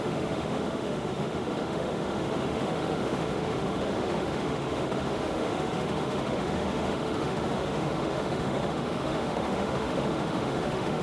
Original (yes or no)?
no